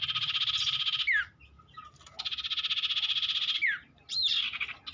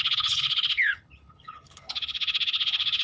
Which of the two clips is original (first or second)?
first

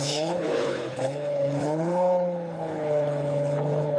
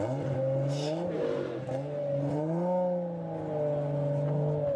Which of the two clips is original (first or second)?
second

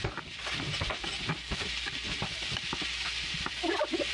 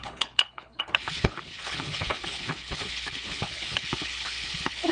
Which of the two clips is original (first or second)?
first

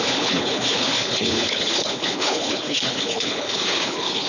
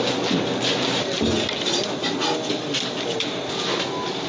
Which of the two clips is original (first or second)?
second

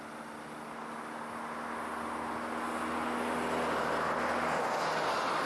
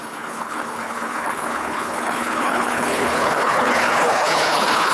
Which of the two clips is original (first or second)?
first